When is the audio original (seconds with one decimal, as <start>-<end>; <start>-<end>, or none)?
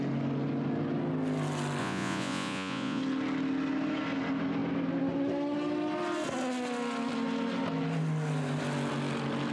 0.0-1.8; 3.0-9.5